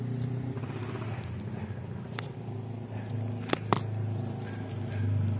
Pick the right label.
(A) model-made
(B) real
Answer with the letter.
B